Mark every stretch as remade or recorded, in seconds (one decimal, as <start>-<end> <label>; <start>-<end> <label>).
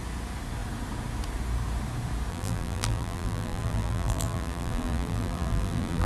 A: 0.0-2.3 recorded; 2.3-6.1 remade